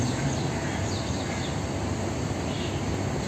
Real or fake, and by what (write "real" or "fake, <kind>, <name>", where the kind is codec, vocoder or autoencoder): real